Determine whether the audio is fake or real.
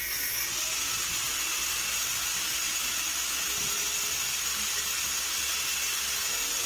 real